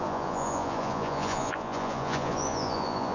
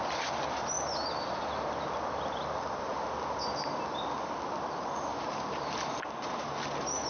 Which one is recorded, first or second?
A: second